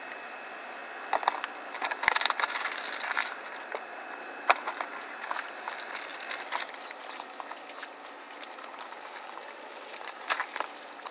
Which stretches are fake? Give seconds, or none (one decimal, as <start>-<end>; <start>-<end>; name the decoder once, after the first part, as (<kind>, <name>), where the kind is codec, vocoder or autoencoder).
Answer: 0.0-0.8 (vocoder, BigVGAN v2); 1.8-6.1; 8.4-11.1